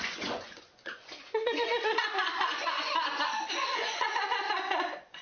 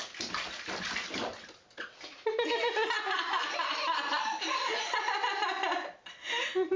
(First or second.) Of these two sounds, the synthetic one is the first